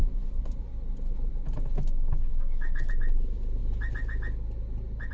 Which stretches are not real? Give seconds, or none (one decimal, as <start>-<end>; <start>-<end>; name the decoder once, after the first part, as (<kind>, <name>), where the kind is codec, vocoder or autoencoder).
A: 2.3-2.9 (codec, DAC)